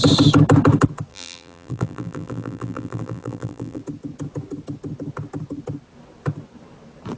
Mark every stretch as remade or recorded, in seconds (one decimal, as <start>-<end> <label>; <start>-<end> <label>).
0.0-1.1 recorded; 1.1-3.8 remade; 3.8-7.2 recorded